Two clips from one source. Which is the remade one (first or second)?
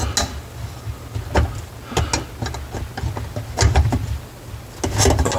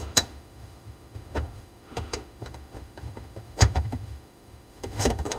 second